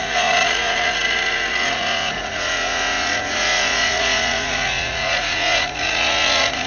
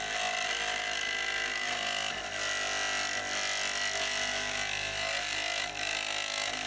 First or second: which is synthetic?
first